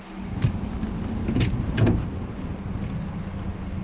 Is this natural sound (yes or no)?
yes